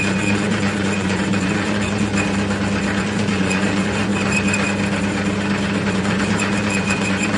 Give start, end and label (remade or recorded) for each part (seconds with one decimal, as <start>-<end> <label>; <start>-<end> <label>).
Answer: 0.0-2.1 remade; 2.1-3.0 recorded; 3.0-4.1 remade; 4.1-5.9 recorded; 5.9-7.4 remade